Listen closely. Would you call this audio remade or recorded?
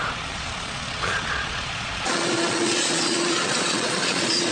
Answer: remade